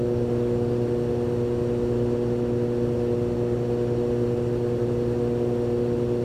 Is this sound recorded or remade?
recorded